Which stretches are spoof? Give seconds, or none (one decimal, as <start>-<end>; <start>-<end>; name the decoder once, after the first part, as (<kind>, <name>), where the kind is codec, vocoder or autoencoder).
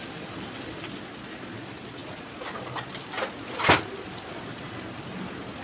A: none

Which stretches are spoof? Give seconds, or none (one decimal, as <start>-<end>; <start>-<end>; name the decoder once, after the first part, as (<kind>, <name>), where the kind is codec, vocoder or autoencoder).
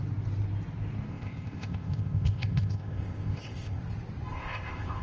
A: 1.1-3.8 (codec, ZipCodec); 4.3-5.0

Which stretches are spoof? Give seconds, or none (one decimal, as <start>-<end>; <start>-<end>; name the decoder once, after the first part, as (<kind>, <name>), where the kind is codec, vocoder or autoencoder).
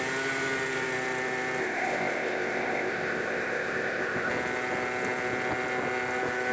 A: 1.6-4.3 (codec, ZipCodec)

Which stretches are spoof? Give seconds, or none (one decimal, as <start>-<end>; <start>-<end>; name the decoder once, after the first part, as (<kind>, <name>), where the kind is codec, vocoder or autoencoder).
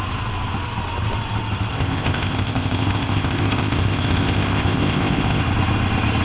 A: 1.7-5.4 (codec, ZipCodec)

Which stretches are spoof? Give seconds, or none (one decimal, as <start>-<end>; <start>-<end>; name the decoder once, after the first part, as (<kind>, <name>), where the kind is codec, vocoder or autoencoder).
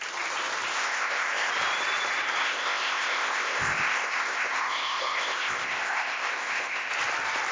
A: 0.7-1.5 (codec, ZipCodec); 2.4-6.9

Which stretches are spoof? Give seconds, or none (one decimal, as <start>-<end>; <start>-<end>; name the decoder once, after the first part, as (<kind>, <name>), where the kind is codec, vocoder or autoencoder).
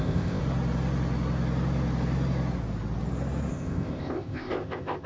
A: 0.0-0.4 (codec, ZipCodec); 3.5-5.1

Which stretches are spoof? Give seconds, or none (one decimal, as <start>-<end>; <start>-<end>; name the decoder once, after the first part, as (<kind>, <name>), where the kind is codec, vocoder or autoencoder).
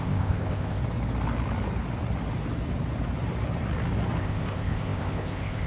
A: 0.0-0.8 (codec, ZipCodec); 4.2-5.7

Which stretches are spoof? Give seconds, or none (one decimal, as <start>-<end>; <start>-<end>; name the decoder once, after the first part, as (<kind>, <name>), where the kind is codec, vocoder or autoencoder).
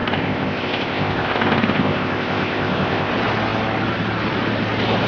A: 0.0-3.1 (codec, ZipCodec)